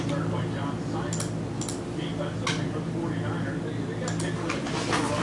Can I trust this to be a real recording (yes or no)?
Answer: yes